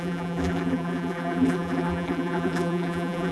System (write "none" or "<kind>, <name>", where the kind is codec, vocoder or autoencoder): vocoder, BigVGAN v2